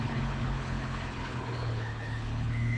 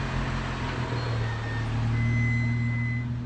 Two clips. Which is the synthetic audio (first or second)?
first